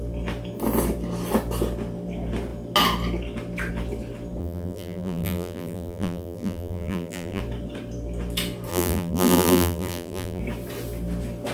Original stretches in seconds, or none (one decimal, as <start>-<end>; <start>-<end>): 0.0-4.4; 7.4-8.7; 10.4-11.5